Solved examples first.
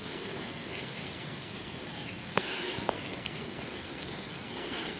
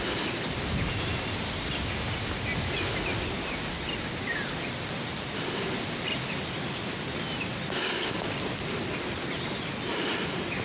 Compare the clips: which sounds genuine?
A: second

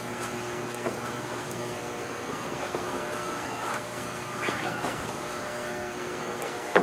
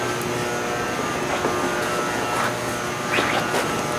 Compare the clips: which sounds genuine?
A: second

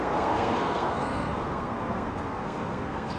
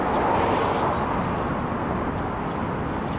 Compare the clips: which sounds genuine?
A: second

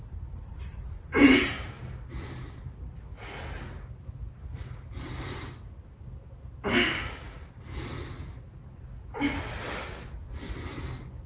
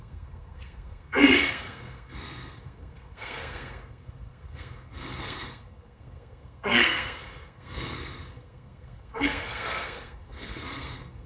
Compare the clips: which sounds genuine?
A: first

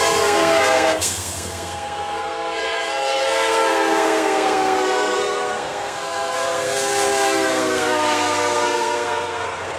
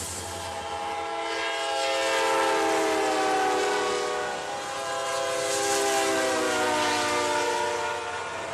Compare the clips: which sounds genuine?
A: second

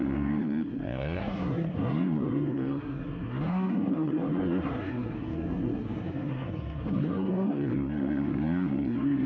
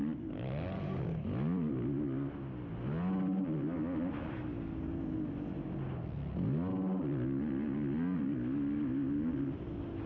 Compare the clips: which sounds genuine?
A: second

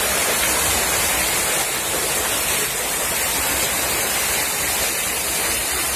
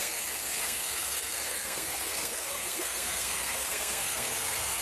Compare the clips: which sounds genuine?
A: first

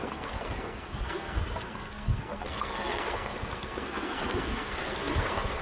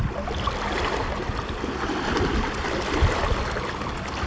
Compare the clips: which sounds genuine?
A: second